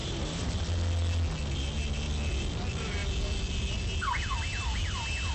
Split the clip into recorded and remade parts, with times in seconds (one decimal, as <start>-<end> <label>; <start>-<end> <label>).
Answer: 0.0-0.5 remade; 0.5-5.3 recorded